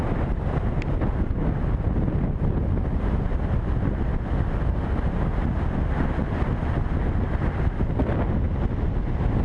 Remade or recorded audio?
recorded